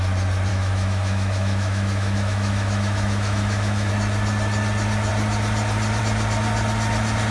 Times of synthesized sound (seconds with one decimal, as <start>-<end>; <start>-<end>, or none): 0.5-3.9